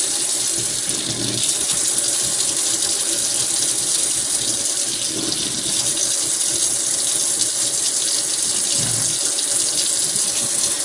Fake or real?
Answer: real